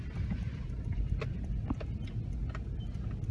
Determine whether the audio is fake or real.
real